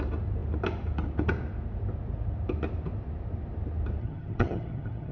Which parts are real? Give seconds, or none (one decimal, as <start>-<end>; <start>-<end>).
0.0-4.0